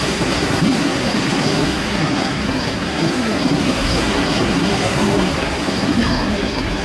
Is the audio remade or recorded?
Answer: remade